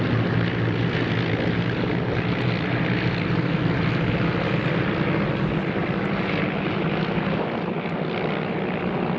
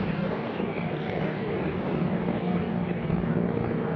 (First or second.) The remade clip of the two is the second